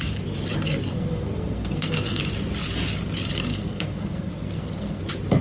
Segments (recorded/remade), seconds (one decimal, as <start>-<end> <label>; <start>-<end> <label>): 0.0-0.9 recorded; 0.9-2.2 remade; 2.2-3.5 recorded; 3.5-5.0 remade; 5.0-5.4 recorded